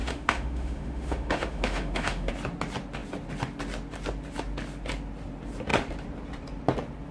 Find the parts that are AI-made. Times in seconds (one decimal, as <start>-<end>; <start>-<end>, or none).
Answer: 0.0-2.3